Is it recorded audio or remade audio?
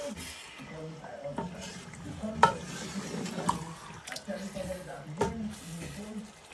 recorded